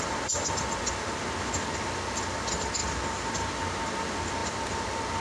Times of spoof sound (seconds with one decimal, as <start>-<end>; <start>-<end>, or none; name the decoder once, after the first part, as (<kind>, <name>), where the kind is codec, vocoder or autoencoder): none